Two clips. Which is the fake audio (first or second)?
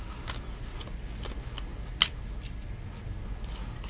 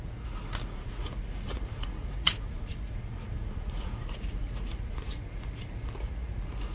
second